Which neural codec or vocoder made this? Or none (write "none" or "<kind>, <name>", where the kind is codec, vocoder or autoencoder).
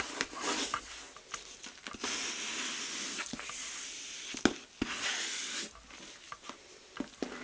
none